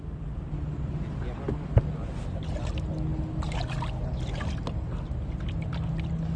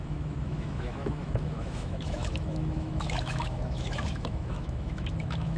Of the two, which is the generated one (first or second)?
second